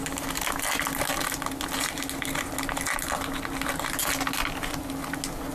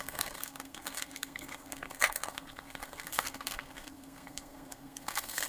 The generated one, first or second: second